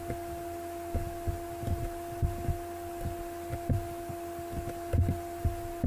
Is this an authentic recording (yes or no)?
yes